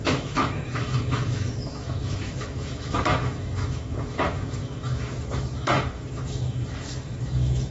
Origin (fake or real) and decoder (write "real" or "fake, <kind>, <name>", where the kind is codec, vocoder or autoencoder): fake, autoencoder, DAC-VAE